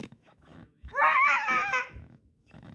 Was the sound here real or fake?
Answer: fake